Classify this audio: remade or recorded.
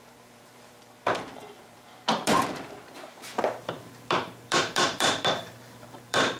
remade